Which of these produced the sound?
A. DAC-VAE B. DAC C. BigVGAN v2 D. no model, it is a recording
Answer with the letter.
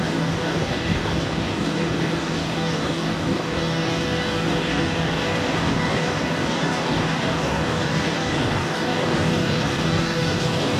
B